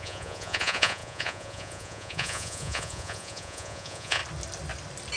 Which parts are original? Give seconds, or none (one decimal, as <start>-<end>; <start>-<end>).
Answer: 4.2-5.2